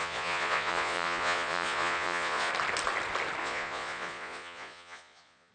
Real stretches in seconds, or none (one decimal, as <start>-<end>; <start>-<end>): 2.5-3.4